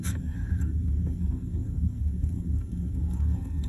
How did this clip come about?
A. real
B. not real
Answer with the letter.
B